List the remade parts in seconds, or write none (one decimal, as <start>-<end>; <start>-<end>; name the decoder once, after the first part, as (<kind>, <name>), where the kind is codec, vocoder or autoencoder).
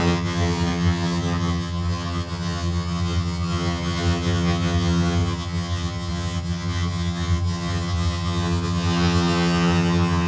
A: 0.0-10.3 (vocoder, HiFi-GAN)